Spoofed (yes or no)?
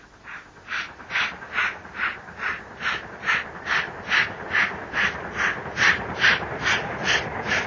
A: no